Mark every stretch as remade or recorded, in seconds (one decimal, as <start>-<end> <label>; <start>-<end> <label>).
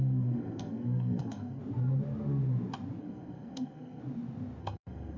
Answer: 0.0-1.6 remade; 1.6-3.0 recorded; 3.0-4.0 remade; 4.0-4.6 recorded; 4.6-5.2 remade